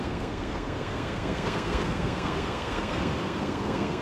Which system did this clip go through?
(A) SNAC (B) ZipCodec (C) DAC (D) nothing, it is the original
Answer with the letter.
A